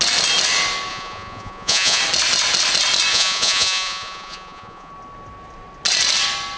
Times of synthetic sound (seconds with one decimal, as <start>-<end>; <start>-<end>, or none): 0.9-2.0; 3.1-4.9